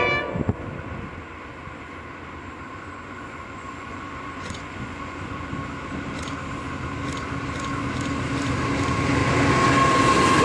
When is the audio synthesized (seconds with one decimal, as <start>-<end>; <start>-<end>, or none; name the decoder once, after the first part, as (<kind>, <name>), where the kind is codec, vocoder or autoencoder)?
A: 2.7-5.5 (vocoder, Vocos)